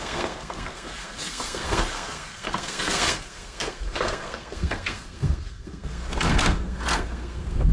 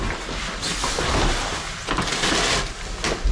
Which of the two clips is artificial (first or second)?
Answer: first